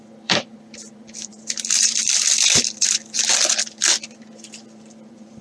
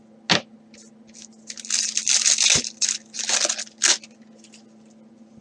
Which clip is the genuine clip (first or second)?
second